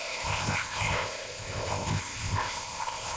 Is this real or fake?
fake